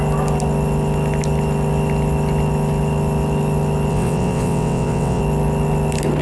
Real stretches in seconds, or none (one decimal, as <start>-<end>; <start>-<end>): 0.0-3.9; 5.2-6.2